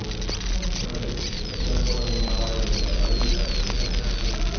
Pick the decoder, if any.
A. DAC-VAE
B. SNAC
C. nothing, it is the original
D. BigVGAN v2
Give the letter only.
C